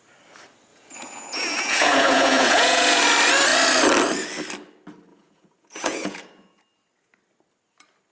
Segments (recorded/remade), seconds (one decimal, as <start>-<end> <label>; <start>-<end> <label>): 0.0-0.7 recorded; 0.7-3.0 remade; 3.0-5.1 recorded; 5.1-6.6 remade; 6.6-8.1 recorded